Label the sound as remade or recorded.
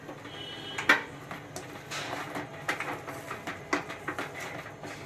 recorded